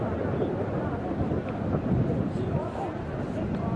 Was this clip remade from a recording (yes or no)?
no